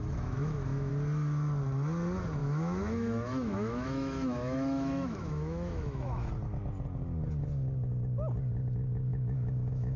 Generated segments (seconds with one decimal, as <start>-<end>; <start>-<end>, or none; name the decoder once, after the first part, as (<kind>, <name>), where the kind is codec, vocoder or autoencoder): 0.0-0.9 (autoencoder, DAC-VAE); 2.4-6.3; 9.1-10.0